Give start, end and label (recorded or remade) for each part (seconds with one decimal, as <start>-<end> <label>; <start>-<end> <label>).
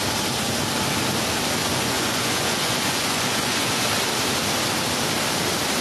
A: 0.0-1.6 recorded; 1.6-3.8 remade; 3.8-5.8 recorded